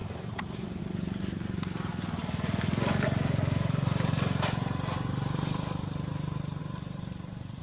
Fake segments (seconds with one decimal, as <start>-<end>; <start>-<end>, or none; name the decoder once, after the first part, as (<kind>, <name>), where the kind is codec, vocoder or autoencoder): 0.0-0.8 (vocoder, BigVGAN v2); 6.6-7.6